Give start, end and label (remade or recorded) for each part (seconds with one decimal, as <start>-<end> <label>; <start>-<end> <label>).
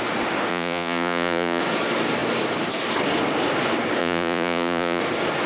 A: 0.0-0.5 recorded; 0.5-1.6 remade; 1.6-4.0 recorded; 4.0-5.0 remade; 5.0-5.5 recorded